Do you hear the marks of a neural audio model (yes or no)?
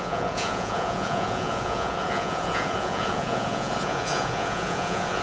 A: yes